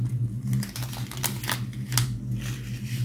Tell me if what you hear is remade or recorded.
recorded